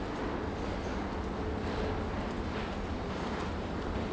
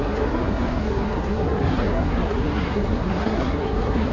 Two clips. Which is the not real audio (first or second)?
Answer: second